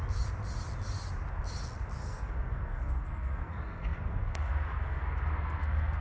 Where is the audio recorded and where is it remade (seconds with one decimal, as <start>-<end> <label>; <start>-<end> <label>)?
0.0-2.0 recorded; 2.0-6.0 remade